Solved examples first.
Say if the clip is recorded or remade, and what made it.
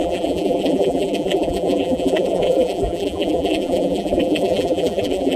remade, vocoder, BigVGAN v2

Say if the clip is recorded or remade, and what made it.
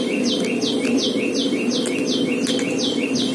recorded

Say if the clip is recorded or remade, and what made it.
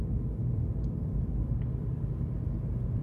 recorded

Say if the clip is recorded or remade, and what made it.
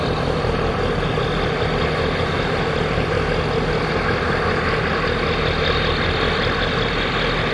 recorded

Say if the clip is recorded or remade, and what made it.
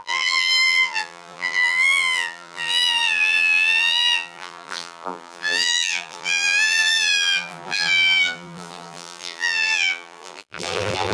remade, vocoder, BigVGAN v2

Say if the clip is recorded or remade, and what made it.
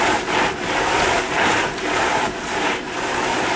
remade, vocoder, BigVGAN v2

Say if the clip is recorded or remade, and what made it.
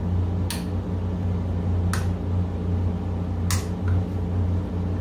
recorded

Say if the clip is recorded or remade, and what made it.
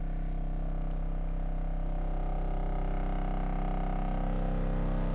recorded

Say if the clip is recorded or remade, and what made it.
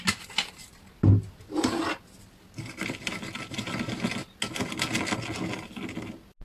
recorded